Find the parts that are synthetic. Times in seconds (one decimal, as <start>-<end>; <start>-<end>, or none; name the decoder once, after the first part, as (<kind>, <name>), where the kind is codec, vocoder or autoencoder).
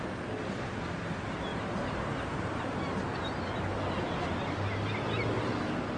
none